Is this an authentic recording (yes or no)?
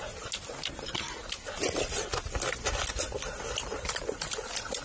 yes